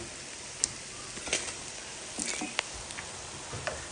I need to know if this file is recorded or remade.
recorded